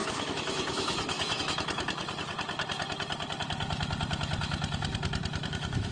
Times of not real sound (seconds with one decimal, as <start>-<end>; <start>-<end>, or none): 0.0-2.0; 5.5-5.9